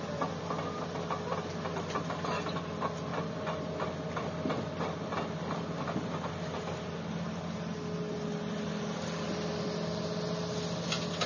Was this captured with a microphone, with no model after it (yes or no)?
yes